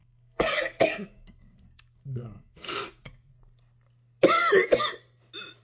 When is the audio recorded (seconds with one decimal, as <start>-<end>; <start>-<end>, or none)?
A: 3.4-5.6